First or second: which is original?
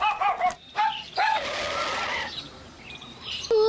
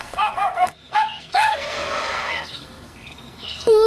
first